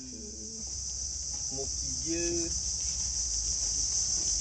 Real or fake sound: real